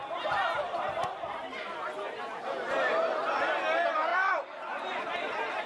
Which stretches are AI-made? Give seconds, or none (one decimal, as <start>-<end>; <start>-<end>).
4.1-5.0